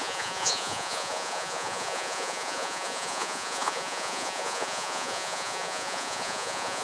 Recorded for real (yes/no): no